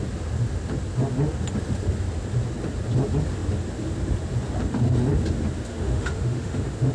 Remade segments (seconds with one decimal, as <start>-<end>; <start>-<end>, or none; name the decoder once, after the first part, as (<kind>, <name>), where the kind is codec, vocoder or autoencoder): 5.7-6.9 (autoencoder, DAC-VAE)

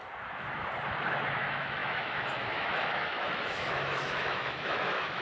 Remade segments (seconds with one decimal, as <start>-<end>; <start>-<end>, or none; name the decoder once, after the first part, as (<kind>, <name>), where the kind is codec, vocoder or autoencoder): 1.3-5.2 (autoencoder, DAC-VAE)

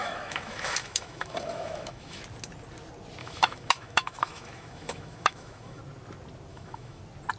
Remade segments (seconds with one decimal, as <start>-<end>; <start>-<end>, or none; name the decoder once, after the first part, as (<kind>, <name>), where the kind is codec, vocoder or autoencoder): 0.0-2.2 (autoencoder, DAC-VAE); 3.2-5.8; 6.5-7.0

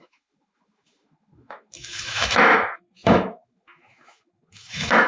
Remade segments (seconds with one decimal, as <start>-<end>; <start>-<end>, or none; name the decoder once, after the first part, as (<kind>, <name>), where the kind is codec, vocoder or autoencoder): 0.0-5.1 (autoencoder, DAC-VAE)

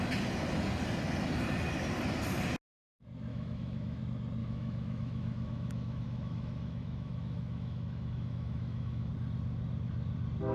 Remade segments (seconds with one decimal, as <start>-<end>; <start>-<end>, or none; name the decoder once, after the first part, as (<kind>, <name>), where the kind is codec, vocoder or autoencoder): 3.3-4.0 (autoencoder, DAC-VAE); 4.4-9.1

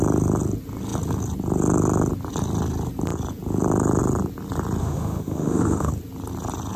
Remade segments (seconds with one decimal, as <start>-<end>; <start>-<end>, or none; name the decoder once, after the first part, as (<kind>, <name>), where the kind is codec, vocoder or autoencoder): 4.8-5.9 (autoencoder, DAC-VAE)

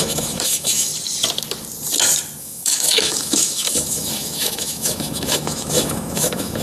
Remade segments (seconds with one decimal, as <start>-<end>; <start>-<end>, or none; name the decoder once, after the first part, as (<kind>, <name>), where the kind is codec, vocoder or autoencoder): 0.0-0.9 (autoencoder, DAC-VAE); 2.4-6.6